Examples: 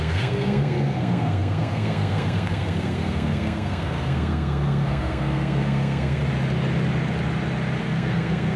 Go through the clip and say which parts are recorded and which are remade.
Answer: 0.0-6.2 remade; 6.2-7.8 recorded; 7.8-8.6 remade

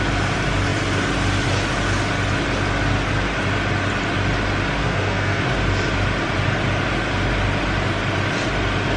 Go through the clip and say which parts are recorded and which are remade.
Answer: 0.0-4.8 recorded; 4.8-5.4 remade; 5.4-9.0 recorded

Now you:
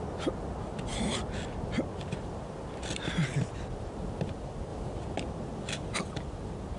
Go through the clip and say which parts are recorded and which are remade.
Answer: 0.0-6.8 recorded